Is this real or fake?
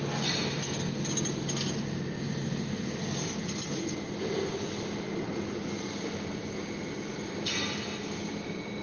real